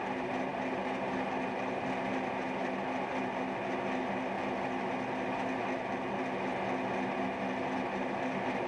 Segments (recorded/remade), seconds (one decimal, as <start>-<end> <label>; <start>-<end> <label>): 0.0-8.7 recorded